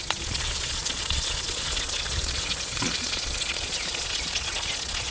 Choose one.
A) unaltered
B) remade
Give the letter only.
B